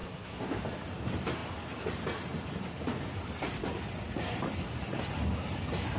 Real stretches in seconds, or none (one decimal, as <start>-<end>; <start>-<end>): 0.6-6.0